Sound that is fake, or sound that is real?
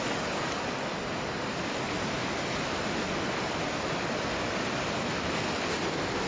real